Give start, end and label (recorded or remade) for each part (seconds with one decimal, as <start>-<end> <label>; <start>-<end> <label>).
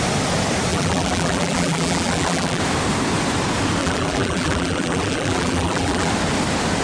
0.0-0.7 recorded; 0.7-2.6 remade; 2.6-3.8 recorded; 3.8-6.1 remade; 6.1-6.8 recorded